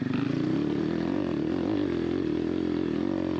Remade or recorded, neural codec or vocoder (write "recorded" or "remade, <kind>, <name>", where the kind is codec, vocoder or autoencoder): recorded